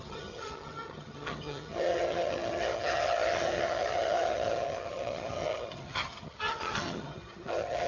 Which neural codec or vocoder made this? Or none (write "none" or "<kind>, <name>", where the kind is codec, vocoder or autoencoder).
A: vocoder, HiFi-GAN